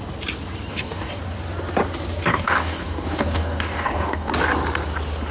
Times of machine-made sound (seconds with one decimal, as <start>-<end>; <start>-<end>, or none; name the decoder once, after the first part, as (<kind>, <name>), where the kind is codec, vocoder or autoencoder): 0.7-1.2 (codec, DAC); 2.3-4.3